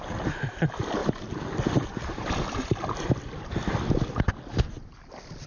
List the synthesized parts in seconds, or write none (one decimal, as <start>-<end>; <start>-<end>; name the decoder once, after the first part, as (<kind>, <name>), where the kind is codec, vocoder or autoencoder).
1.0-4.3 (vocoder, BigVGAN v2)